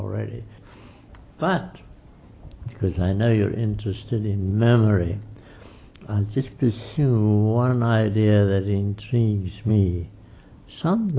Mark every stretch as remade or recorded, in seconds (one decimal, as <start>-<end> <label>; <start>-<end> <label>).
0.0-11.2 recorded